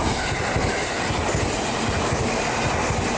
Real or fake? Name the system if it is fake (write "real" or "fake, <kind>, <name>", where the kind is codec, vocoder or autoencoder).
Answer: real